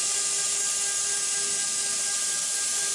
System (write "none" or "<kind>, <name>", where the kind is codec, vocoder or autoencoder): none